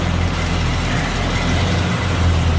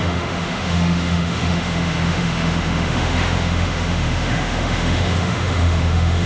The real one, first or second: first